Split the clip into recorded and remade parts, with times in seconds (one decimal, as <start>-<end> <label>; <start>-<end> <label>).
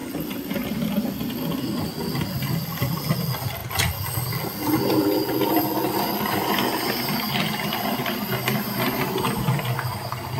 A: 0.0-10.4 recorded